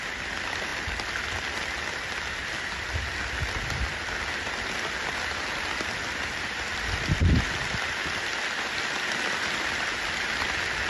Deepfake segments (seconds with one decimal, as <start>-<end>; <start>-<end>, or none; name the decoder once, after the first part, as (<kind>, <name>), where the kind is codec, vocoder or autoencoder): none